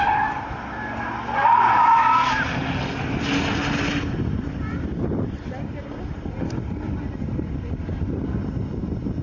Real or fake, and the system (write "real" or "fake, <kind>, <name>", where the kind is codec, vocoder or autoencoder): real